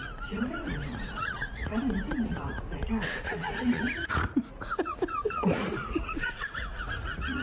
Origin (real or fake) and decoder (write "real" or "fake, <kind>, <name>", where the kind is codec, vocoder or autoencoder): fake, vocoder, Vocos